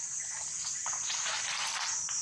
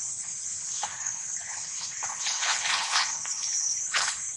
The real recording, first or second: first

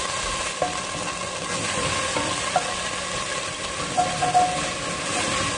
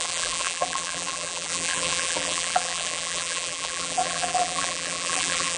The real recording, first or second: first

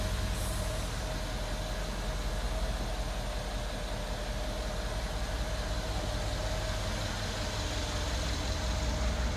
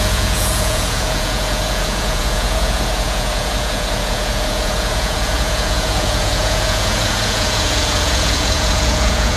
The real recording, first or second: first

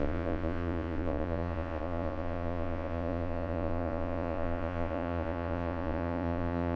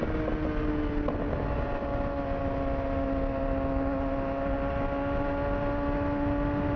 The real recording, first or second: second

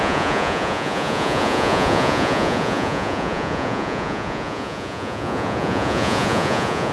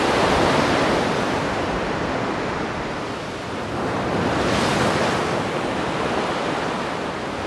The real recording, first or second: second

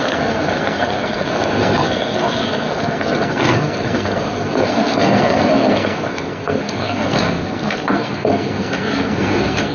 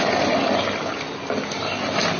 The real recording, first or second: second